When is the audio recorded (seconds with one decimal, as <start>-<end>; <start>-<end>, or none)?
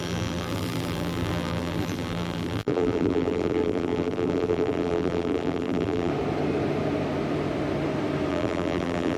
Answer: 6.1-8.3